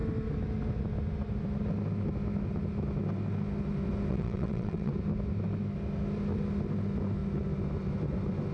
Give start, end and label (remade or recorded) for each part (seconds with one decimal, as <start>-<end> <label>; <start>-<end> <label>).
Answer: 0.0-4.1 recorded; 4.1-4.9 remade; 4.9-8.5 recorded